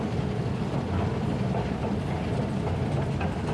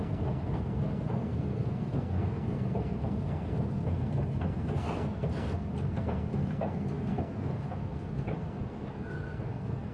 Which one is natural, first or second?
first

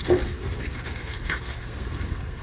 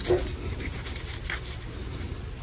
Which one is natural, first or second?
second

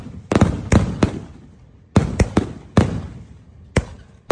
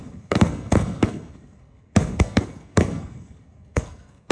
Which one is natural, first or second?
first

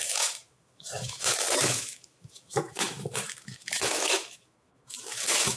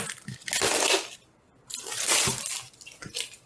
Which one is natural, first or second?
second